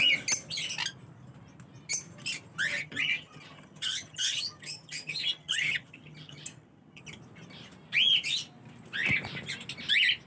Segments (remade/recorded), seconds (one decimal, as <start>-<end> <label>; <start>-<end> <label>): 0.0-2.8 recorded; 2.8-7.0 remade; 7.0-10.3 recorded